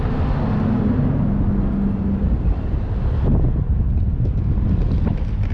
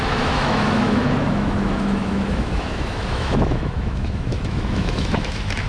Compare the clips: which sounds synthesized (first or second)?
second